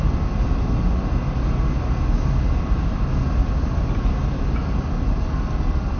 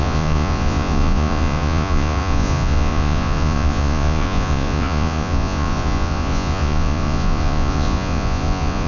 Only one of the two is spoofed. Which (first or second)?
second